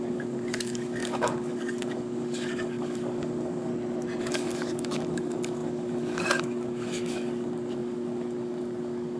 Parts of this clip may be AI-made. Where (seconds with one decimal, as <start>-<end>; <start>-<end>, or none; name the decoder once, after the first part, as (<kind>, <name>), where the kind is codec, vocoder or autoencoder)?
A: 0.0-3.7 (codec, DAC); 4.2-9.2